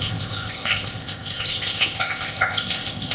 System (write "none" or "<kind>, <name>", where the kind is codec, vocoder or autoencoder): codec, ZipCodec